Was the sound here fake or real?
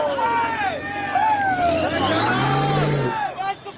real